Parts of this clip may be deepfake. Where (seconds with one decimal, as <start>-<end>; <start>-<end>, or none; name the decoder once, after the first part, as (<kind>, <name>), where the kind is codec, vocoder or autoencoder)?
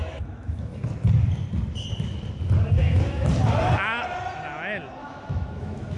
0.0-0.8 (autoencoder, DAC-VAE); 2.8-3.3; 5.0-6.0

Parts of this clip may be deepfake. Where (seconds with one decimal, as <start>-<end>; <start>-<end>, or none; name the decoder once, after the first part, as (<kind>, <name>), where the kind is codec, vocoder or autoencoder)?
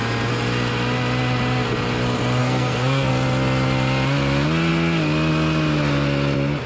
2.4-3.1 (codec, SNAC)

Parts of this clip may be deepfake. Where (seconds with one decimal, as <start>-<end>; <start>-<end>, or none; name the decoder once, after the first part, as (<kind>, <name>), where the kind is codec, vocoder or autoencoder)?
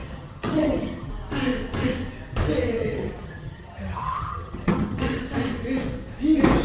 0.0-1.1 (vocoder, HiFi-GAN); 2.8-5.2